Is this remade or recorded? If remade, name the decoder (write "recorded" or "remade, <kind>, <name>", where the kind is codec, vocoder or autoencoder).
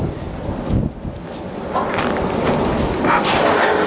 recorded